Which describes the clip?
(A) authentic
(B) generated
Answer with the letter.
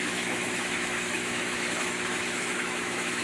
B